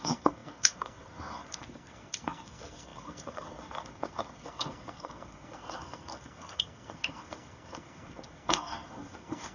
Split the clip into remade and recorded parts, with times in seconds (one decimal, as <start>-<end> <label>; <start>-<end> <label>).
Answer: 0.0-9.5 remade